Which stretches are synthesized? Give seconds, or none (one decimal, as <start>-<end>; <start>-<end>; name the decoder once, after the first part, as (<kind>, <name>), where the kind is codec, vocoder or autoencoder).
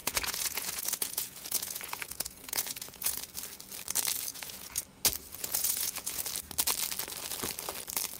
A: 0.0-3.2 (vocoder, Vocos); 4.3-4.8; 5.4-6.2